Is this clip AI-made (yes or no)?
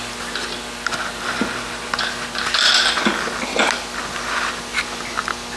no